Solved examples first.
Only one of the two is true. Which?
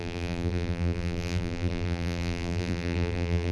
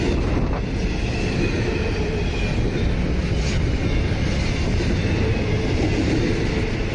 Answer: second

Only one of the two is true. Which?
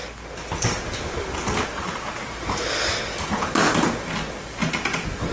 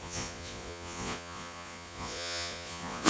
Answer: first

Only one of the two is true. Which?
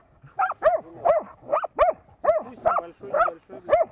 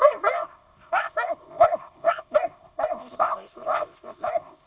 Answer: first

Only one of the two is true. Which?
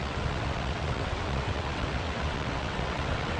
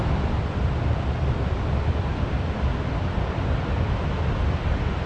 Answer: second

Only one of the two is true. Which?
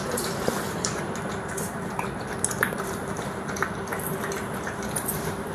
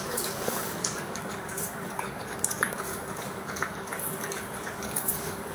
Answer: first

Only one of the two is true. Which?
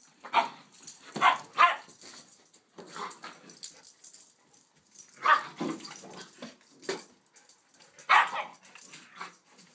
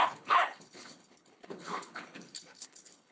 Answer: first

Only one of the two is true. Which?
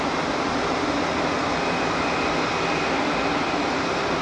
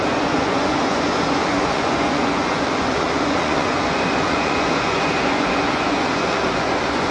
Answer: first